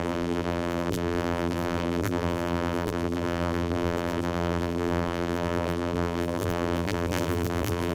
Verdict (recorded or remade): remade